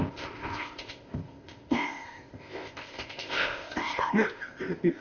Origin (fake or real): fake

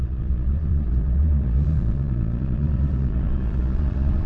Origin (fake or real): fake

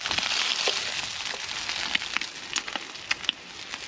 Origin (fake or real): real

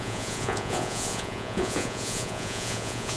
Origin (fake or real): fake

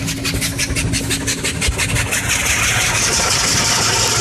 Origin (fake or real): real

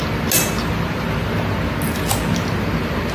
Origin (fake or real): real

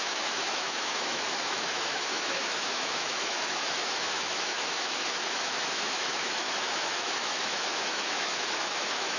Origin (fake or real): fake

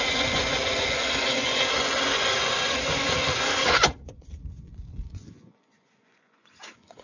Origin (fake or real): fake